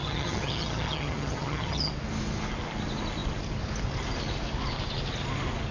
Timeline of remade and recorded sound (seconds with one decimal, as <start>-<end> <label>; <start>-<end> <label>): 0.0-1.9 remade; 1.9-5.7 recorded